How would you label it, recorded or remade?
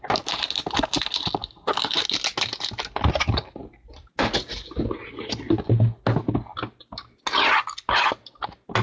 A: recorded